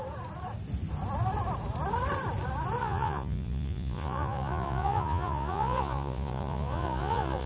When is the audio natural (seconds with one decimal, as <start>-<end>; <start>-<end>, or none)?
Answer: 0.0-2.8